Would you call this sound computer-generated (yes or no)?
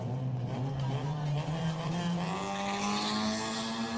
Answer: no